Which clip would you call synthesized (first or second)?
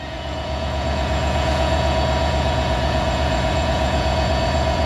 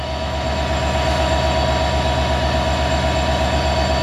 first